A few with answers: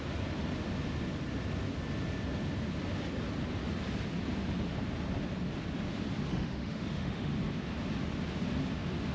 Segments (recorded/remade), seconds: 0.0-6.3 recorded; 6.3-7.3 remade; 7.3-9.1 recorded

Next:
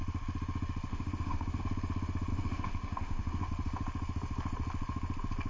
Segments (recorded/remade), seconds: 0.0-0.9 recorded; 0.9-1.6 remade; 1.6-2.3 recorded; 2.3-3.5 remade; 3.5-5.5 recorded

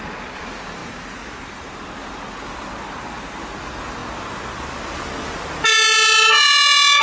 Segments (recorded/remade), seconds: 0.0-7.0 recorded

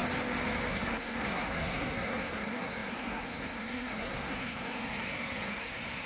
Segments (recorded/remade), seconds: 0.0-0.7 recorded; 0.7-6.1 remade